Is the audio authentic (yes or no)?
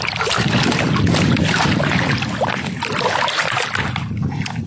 yes